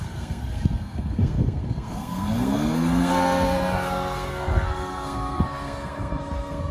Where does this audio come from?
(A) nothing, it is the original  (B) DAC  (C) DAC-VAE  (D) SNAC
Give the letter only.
D